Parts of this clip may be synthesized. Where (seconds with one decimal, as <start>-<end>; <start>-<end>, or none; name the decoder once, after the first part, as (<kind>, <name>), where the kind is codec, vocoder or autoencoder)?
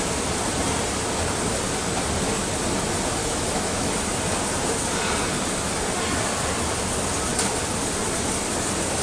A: 3.2-3.9 (autoencoder, DAC-VAE)